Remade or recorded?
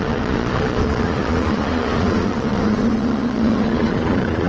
remade